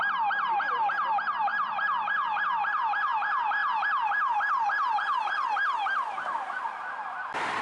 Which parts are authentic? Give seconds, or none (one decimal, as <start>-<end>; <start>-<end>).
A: 0.0-1.5; 2.4-3.6; 6.6-7.6